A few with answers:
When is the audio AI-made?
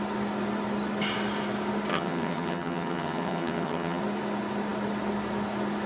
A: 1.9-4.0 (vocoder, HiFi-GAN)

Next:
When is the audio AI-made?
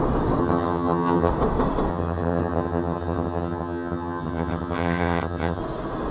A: 0.4-1.3 (vocoder, HiFi-GAN); 1.9-5.6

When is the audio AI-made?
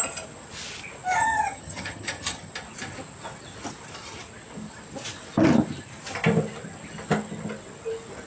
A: 1.2-2.5 (vocoder, HiFi-GAN)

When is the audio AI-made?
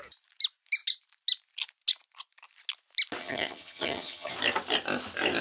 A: 3.2-4.3 (vocoder, HiFi-GAN)